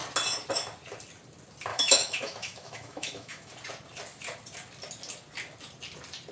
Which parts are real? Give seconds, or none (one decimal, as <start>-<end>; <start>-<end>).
0.0-1.7; 3.5-6.3